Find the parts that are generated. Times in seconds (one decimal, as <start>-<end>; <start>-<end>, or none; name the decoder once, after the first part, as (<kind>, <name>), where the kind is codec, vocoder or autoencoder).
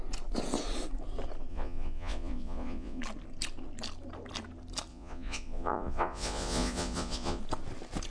1.5-3.0 (vocoder, Vocos); 4.9-7.4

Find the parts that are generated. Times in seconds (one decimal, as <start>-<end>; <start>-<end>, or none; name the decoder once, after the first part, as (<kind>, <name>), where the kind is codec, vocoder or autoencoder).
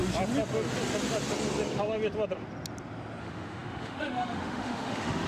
3.2-5.3 (autoencoder, DAC-VAE)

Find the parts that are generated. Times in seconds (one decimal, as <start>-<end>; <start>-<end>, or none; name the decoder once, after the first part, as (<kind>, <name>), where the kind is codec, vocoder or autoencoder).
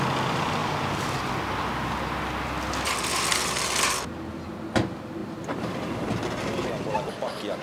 5.2-6.1 (vocoder, BigVGAN v2)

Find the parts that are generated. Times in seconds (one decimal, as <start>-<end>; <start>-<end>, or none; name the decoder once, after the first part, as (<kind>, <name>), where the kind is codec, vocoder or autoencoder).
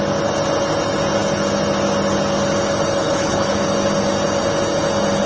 3.0-3.6 (codec, HILCodec)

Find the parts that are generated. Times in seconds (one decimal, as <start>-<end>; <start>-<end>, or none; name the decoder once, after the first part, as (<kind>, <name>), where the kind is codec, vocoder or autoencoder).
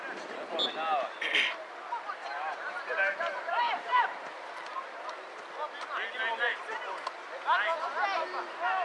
2.2-4.3 (vocoder, BigVGAN v2)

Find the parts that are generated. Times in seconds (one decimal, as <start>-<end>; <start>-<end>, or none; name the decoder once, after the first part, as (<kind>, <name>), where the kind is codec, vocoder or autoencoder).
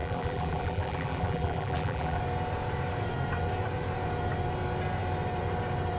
0.0-2.2 (vocoder, BigVGAN v2)